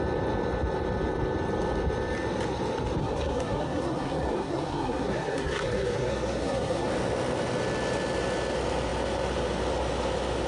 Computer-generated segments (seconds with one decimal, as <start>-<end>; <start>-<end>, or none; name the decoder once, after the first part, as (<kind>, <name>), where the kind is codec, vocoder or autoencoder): 3.0-6.9 (codec, SNAC)